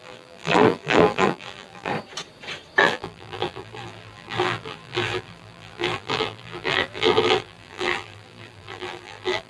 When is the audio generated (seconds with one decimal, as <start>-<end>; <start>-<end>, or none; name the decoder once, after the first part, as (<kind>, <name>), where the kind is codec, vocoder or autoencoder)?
0.0-1.9 (vocoder, BigVGAN v2); 2.8-9.5